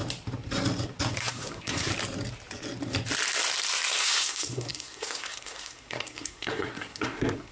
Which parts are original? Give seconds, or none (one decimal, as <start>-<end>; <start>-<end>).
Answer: 0.0-1.2; 1.9-4.0